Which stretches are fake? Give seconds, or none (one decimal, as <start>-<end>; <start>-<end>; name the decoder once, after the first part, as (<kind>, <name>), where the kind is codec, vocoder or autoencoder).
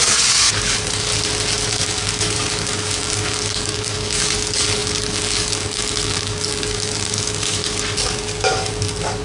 0.0-1.1 (codec, DAC); 1.7-7.6; 8.1-9.2